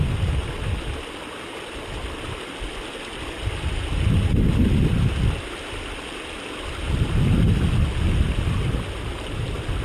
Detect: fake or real real